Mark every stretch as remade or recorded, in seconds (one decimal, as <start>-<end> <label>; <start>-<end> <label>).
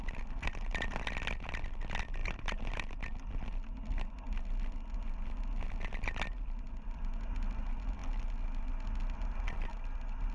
0.0-10.3 recorded